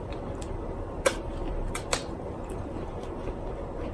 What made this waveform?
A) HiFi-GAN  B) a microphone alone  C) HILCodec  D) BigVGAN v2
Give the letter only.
D